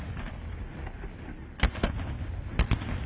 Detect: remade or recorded recorded